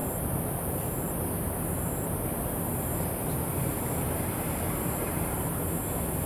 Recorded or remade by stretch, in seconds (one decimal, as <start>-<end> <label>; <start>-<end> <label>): 0.0-1.1 remade; 1.1-3.2 recorded; 3.2-5.6 remade; 5.6-6.3 recorded